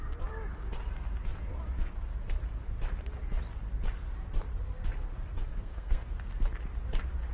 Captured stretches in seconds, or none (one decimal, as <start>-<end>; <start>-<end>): 0.0-5.5; 6.1-7.3

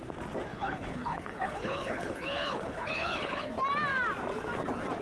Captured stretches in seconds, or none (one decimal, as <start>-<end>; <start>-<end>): 0.0-0.5; 3.5-5.0

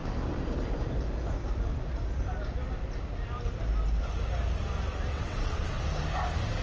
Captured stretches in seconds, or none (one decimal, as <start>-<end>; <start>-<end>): 0.0-5.1; 5.8-6.6